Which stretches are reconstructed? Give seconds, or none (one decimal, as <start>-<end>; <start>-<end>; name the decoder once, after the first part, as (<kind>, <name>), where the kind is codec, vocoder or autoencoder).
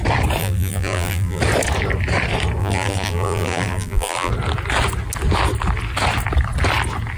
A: 0.4-1.4 (vocoder, BigVGAN v2); 2.6-4.3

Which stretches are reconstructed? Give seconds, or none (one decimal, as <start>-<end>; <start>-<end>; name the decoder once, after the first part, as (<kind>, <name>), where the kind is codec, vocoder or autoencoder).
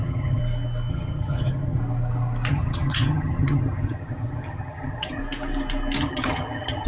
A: 0.0-0.4 (vocoder, HiFi-GAN); 0.9-1.8; 2.5-5.2; 6.0-6.9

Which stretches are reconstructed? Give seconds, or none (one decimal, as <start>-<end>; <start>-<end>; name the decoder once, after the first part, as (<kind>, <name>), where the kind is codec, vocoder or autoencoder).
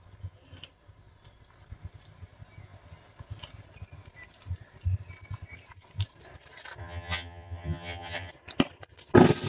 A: 6.8-8.3 (vocoder, HiFi-GAN)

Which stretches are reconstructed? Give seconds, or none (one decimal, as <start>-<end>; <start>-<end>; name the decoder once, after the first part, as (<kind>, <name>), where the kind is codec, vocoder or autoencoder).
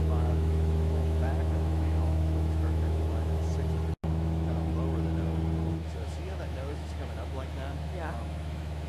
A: 0.0-3.5 (autoencoder, DAC-VAE); 4.1-4.7; 5.7-8.9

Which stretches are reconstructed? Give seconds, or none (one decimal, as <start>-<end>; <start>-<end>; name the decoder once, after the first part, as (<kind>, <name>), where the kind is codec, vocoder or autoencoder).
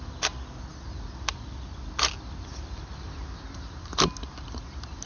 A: none